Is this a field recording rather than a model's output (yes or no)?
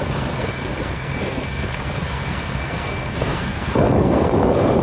no